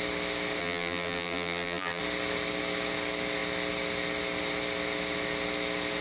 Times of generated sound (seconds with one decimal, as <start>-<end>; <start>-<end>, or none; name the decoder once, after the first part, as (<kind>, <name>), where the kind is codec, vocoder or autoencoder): 0.6-2.0 (vocoder, BigVGAN v2)